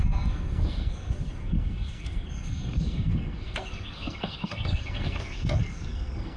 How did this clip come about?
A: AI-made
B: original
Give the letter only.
A